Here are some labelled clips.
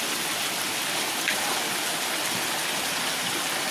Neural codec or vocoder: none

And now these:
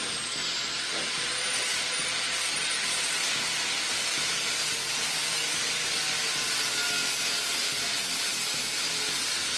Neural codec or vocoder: none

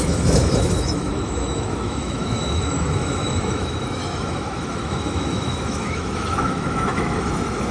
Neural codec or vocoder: autoencoder, DAC-VAE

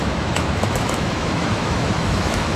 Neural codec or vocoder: autoencoder, DAC-VAE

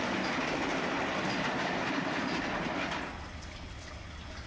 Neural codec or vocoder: none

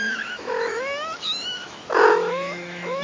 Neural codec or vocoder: autoencoder, DAC-VAE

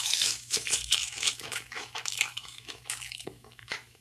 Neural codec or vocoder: autoencoder, DAC-VAE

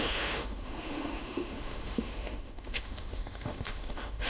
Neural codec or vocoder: autoencoder, DAC-VAE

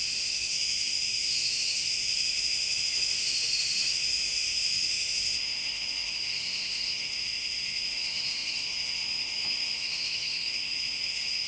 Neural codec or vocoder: autoencoder, DAC-VAE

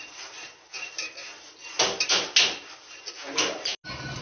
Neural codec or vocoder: none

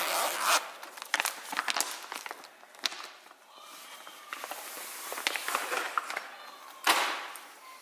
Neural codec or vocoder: none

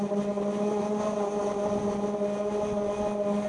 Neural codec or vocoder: none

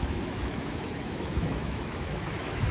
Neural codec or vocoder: autoencoder, DAC-VAE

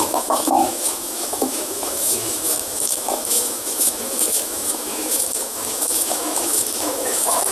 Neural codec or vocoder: autoencoder, DAC-VAE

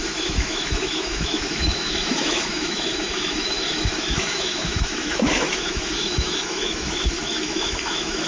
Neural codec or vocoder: autoencoder, DAC-VAE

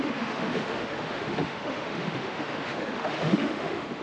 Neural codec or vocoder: autoencoder, DAC-VAE